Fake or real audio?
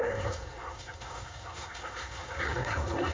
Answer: fake